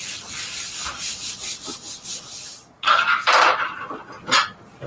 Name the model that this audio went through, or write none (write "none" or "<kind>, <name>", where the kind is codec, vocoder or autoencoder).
none